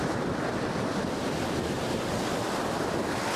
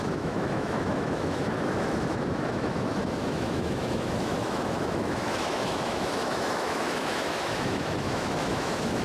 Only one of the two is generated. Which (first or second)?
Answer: second